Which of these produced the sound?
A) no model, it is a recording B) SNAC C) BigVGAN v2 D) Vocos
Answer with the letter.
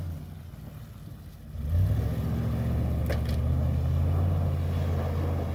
A